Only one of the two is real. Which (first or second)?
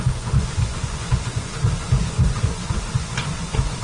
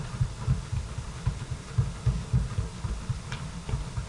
second